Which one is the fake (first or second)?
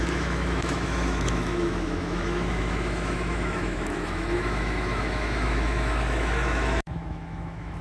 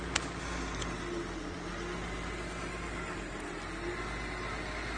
first